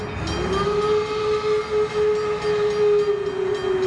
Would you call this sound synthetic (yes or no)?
no